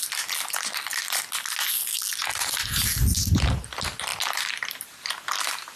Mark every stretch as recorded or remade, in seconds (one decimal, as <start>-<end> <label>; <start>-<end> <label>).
0.0-2.3 recorded; 2.3-3.2 remade; 3.2-4.1 recorded; 4.1-5.1 remade; 5.1-5.8 recorded